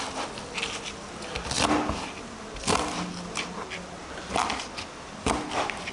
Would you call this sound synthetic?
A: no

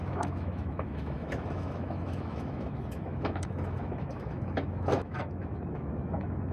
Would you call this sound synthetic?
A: yes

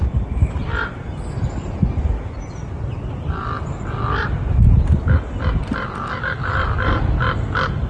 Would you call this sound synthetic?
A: no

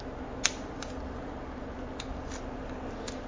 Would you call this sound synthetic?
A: no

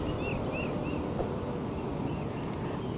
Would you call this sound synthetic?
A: no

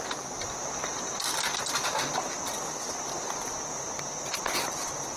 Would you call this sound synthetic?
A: no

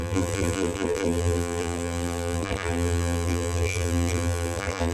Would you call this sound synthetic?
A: yes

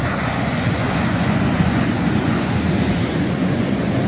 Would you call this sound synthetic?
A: yes